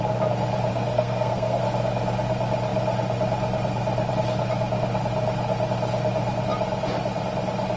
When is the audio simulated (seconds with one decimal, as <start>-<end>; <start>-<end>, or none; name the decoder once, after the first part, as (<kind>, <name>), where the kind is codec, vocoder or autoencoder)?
0.7-1.6 (codec, SNAC)